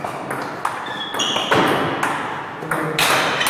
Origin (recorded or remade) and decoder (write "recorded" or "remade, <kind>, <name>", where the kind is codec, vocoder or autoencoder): recorded